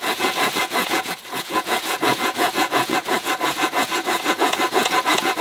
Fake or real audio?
fake